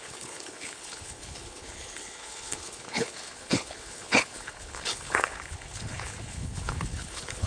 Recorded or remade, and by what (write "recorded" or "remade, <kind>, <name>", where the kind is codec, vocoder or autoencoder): remade, codec, HILCodec